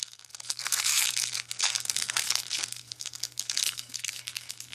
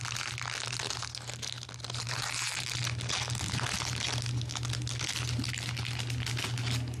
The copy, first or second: first